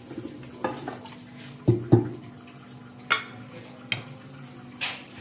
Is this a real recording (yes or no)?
yes